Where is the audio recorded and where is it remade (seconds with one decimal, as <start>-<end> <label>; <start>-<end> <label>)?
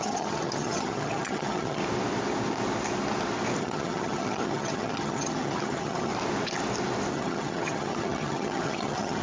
0.0-1.8 remade; 1.8-3.6 recorded; 3.6-6.1 remade; 6.1-7.1 recorded; 7.1-9.2 remade